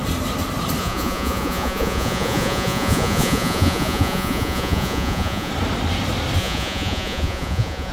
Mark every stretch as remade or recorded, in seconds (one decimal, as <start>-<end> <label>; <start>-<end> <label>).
0.0-0.8 recorded; 0.8-5.5 remade; 5.5-6.4 recorded; 6.4-7.9 remade